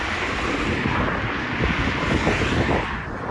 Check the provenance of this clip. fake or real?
real